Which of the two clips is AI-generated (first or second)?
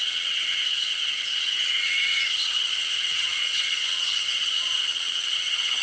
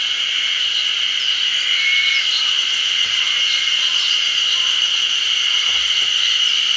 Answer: first